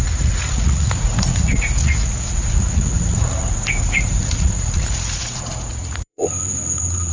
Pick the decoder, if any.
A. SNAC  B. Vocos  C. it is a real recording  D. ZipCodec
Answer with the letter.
B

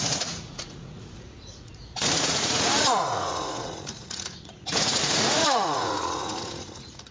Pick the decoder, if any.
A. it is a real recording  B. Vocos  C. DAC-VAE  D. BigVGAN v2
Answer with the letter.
B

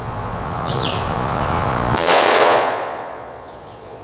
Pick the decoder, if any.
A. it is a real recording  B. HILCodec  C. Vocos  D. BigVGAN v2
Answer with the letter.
C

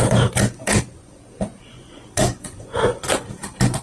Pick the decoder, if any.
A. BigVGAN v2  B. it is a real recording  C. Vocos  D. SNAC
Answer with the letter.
C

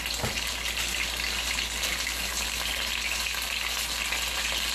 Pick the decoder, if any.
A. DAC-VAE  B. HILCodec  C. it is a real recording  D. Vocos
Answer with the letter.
C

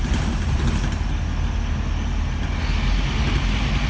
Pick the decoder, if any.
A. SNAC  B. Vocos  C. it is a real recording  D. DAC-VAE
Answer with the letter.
C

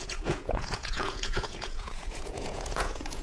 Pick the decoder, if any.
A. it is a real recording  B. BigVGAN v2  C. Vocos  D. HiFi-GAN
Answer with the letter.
C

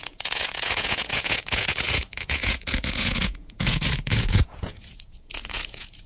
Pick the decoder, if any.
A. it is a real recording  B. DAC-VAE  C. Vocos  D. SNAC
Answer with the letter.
C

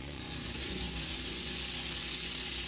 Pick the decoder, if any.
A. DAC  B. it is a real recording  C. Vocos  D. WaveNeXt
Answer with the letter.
C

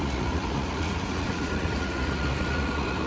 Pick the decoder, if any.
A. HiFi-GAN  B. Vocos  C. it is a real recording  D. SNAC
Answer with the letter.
B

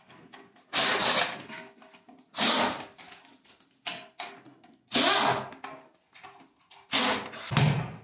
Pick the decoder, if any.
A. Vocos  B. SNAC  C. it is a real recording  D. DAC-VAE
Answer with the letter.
C